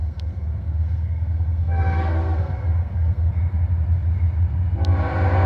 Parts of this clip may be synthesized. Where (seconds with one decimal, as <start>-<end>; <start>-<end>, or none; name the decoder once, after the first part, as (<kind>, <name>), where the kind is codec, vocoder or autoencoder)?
0.0-3.3 (codec, SNAC)